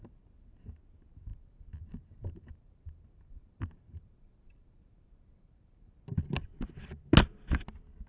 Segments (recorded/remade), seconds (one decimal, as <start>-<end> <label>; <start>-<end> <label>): 0.0-1.3 recorded; 1.3-5.9 remade; 5.9-8.1 recorded